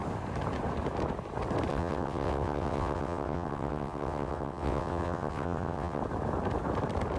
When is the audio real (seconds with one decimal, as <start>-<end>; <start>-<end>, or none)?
0.0-1.7; 6.0-7.2